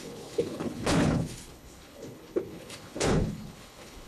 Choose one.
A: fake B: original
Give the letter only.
A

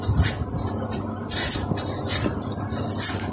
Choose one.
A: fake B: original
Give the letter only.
B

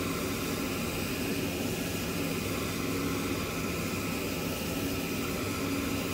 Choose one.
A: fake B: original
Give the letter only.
B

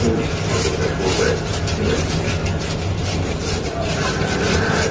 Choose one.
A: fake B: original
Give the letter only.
B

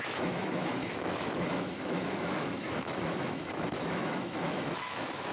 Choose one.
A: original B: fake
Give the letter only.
B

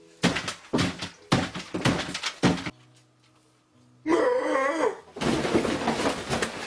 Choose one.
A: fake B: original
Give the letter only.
B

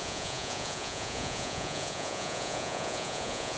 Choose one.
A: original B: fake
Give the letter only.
B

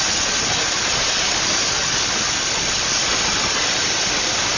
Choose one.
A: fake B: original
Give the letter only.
B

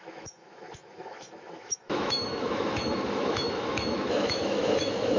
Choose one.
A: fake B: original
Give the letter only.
A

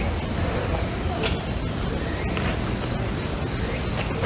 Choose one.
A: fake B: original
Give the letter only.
B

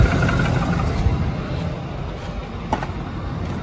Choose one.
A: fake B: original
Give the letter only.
B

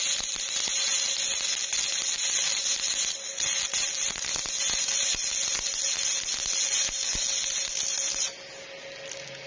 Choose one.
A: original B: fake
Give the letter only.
A